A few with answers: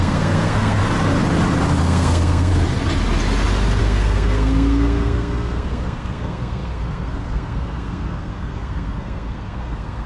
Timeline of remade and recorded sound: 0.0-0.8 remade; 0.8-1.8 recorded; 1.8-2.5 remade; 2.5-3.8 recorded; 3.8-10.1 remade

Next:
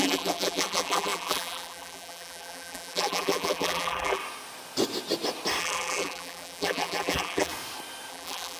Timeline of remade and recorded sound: 0.0-4.2 remade; 4.2-5.6 recorded; 5.6-7.5 remade; 7.5-8.1 recorded; 8.1-8.6 remade

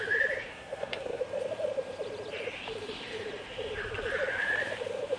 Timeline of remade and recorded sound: 0.0-0.5 recorded; 0.5-1.2 remade; 1.2-5.2 recorded

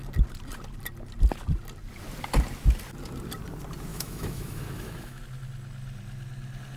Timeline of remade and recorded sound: 0.0-3.9 recorded; 3.9-5.2 remade; 5.2-6.8 recorded